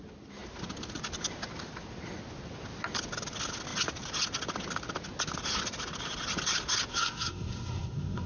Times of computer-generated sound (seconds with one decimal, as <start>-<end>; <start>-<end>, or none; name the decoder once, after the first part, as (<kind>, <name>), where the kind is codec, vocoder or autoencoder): 6.9-8.3 (codec, SNAC)